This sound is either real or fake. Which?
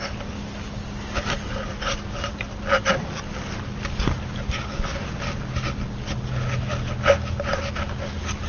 real